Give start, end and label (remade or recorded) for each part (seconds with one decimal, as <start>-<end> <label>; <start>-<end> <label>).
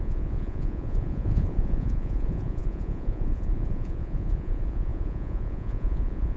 0.0-6.4 remade